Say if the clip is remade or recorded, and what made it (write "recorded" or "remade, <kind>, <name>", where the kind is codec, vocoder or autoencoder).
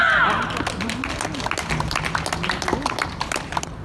recorded